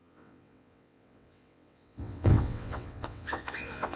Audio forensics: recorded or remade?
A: remade